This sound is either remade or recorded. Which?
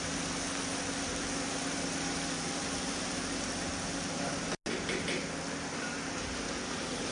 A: recorded